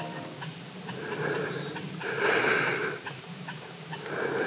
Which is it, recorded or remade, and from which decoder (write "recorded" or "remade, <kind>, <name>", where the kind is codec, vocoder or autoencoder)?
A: recorded